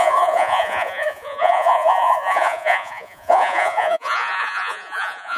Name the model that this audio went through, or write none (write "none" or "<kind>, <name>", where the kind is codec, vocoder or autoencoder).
vocoder, Vocos